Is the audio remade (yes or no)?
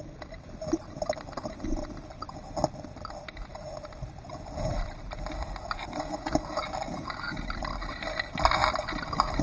no